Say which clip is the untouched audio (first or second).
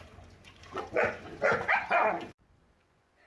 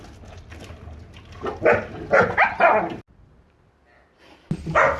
second